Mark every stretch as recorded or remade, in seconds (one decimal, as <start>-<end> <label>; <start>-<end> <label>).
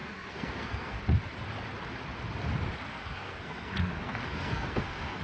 0.0-1.0 remade; 1.0-2.9 recorded; 2.9-5.2 remade